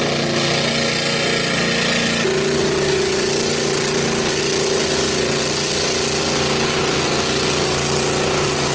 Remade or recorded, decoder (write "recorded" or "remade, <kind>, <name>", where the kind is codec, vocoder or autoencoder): recorded